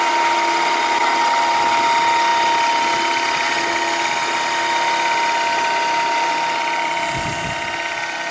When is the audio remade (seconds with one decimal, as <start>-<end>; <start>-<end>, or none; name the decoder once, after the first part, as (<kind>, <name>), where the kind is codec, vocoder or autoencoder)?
2.3-6.3 (vocoder, BigVGAN v2)